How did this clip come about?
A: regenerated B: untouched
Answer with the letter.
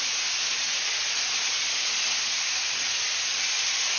B